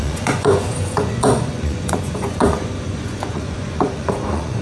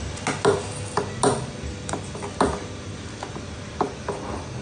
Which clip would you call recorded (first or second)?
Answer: second